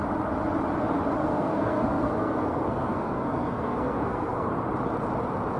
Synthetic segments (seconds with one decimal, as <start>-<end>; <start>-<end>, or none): 1.2-4.5